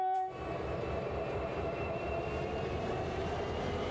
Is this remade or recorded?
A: remade